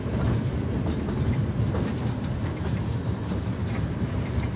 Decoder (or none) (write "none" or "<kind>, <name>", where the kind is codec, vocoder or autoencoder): vocoder, BigVGAN v2